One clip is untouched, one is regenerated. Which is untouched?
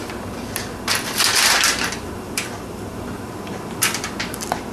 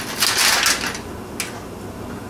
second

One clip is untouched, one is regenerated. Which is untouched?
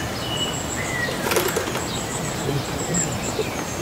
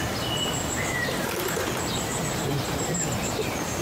first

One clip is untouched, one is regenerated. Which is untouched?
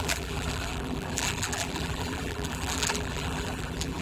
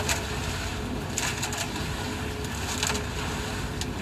second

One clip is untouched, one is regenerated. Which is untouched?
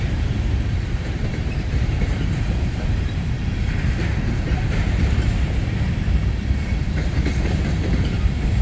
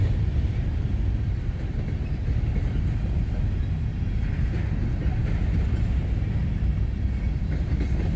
second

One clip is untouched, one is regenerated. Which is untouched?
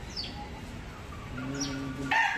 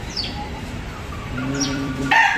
first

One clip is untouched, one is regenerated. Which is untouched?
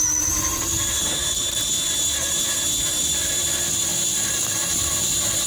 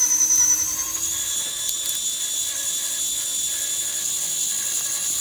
second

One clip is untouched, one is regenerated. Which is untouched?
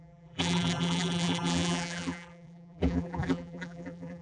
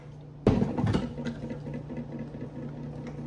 second